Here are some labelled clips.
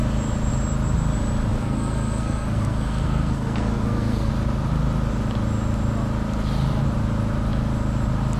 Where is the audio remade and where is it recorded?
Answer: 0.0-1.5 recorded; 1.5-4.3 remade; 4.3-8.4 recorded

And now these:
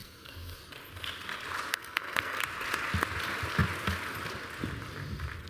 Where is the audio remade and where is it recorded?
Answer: 0.0-0.6 remade; 0.6-1.7 recorded; 1.7-2.4 remade; 2.4-5.5 recorded

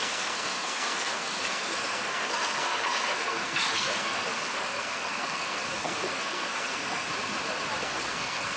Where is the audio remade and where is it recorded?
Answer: 0.0-7.1 remade; 7.1-7.8 recorded; 7.8-8.6 remade

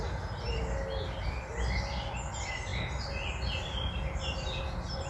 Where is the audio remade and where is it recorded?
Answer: 0.0-5.1 recorded

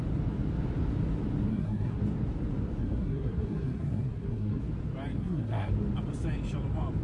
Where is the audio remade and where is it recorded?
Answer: 0.0-1.5 recorded; 1.5-2.0 remade; 2.0-2.8 recorded; 2.8-4.6 remade; 4.6-5.2 recorded; 5.2-5.7 remade; 5.7-7.0 recorded

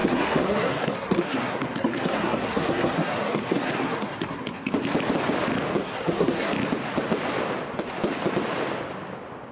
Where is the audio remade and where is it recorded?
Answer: 0.0-4.7 remade; 4.7-5.8 recorded; 5.8-6.5 remade; 6.5-9.5 recorded